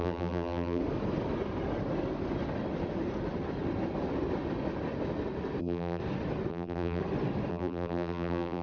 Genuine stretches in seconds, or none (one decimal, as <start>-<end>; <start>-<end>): 0.8-5.6; 6.0-6.5; 7.0-7.5